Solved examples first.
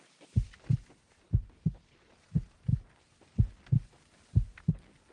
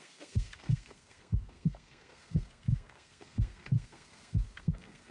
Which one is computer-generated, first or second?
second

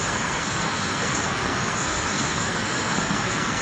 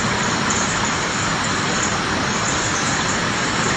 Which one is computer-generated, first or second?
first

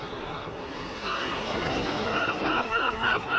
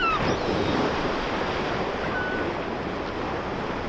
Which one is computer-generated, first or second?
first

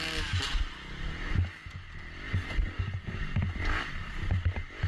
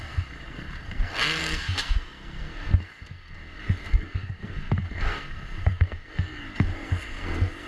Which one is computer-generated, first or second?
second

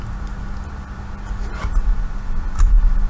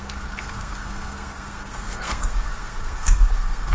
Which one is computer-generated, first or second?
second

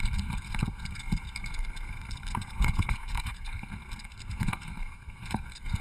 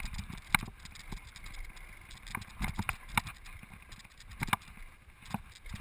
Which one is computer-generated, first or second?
first